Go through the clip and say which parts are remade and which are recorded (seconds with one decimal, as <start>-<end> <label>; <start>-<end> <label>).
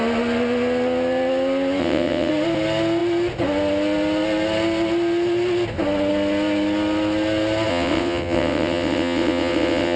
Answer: 0.0-1.8 recorded; 1.8-2.3 remade; 2.3-7.7 recorded; 7.7-10.0 remade